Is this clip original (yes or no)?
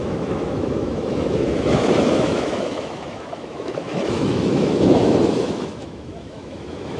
no